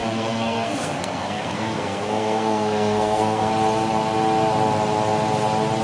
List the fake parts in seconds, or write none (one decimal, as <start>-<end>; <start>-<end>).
0.0-3.5